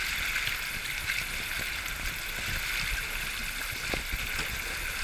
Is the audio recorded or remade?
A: recorded